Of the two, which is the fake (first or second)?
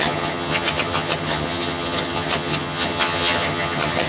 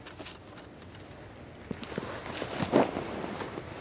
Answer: first